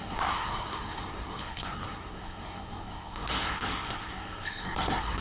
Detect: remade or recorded remade